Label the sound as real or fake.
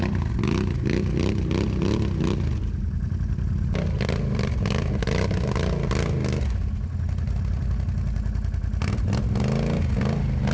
real